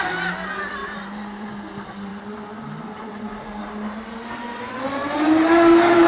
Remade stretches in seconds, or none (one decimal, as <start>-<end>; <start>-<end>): 0.8-1.5; 5.0-6.1